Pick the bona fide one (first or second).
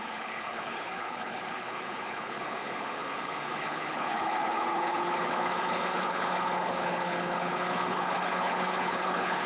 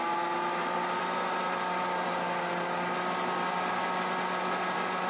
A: second